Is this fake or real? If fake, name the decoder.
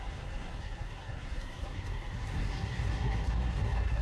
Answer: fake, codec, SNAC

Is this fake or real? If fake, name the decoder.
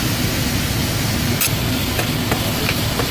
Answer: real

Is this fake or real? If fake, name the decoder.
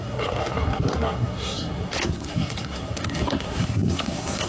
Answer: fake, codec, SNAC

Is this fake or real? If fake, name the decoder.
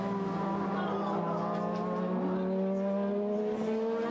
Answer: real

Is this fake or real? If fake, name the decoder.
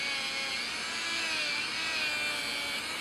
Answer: real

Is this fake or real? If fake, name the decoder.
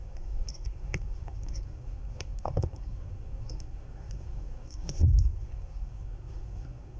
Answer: fake, codec, SNAC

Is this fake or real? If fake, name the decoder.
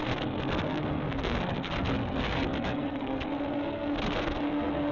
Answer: fake, codec, SNAC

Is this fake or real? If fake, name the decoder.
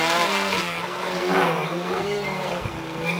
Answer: fake, codec, SNAC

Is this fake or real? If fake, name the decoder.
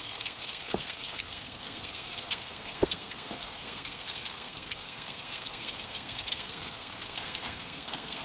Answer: fake, codec, SNAC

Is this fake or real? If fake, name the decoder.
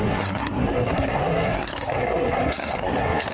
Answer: fake, codec, SNAC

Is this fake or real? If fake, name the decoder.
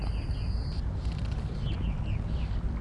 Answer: real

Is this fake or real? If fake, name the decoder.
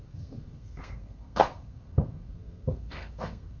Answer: fake, codec, SNAC